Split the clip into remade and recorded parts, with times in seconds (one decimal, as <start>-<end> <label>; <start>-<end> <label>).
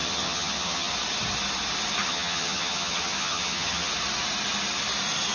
0.0-0.9 remade; 0.9-2.0 recorded; 2.0-3.9 remade; 3.9-5.3 recorded